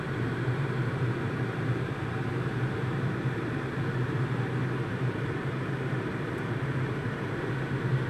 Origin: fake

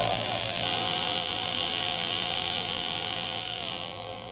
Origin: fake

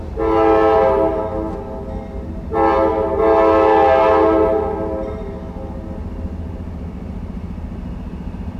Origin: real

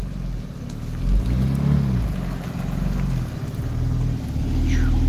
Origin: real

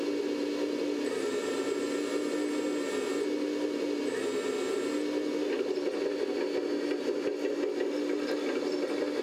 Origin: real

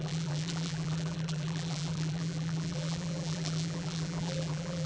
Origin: fake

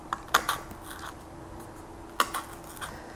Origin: real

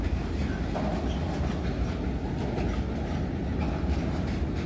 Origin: real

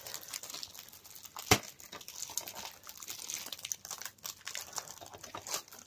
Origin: real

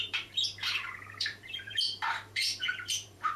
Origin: fake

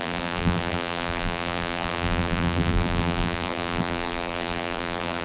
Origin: fake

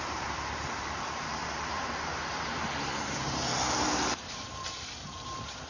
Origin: fake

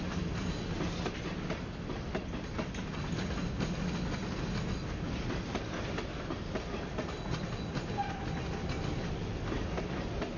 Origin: real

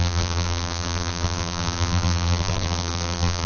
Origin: fake